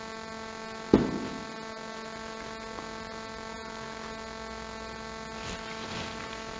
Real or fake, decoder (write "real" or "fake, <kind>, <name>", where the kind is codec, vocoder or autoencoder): real